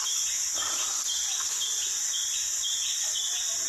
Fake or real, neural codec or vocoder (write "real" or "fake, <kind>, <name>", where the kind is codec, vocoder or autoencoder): real